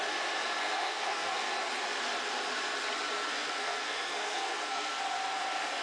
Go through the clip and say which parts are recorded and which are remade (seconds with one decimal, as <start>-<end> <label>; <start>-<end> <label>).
0.0-0.6 recorded; 0.6-1.4 remade; 1.4-3.3 recorded; 3.3-4.9 remade; 4.9-5.8 recorded